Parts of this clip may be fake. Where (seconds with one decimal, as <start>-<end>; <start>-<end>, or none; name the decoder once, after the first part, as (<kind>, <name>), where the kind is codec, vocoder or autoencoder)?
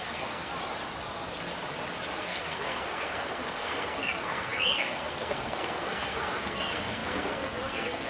0.0-0.5 (codec, SNAC); 2.2-8.1